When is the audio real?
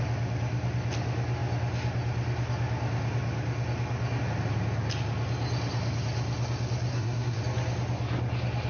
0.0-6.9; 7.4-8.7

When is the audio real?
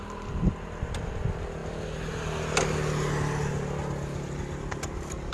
0.0-5.3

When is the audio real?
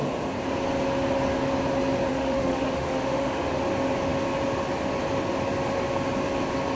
0.0-2.1; 3.6-6.8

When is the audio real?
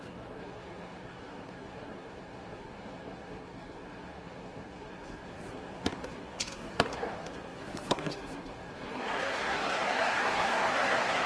none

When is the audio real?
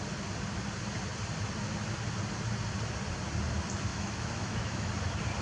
0.0-3.9; 4.9-5.4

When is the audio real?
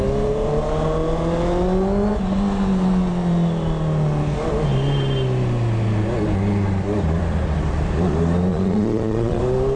0.0-8.5; 9.4-9.8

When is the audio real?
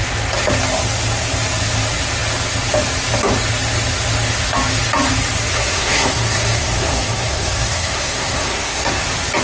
0.0-5.5; 9.0-9.4